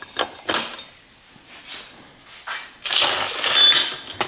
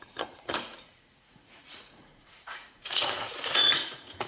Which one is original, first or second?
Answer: first